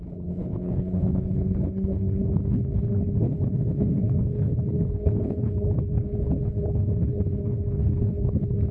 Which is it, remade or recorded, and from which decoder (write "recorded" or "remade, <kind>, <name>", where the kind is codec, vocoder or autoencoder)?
remade, codec, HILCodec